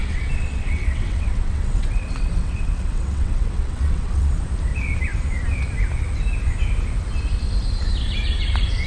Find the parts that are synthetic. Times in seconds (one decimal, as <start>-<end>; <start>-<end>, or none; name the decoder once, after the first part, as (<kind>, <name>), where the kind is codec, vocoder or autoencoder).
0.0-4.3 (vocoder, WaveNeXt)